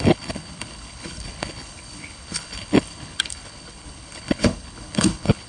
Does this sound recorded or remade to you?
remade